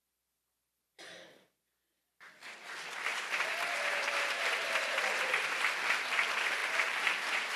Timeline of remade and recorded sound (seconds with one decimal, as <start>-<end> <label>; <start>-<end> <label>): 0.0-3.1 recorded; 3.1-5.8 remade; 5.8-6.6 recorded; 6.6-7.6 remade